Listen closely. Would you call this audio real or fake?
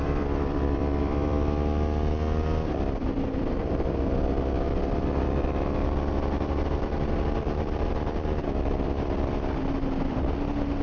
fake